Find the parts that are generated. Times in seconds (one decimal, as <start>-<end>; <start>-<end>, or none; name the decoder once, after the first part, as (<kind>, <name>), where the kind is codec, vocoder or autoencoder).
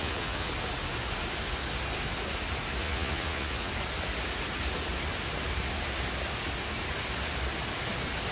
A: 0.0-0.5 (vocoder, Vocos); 2.8-3.7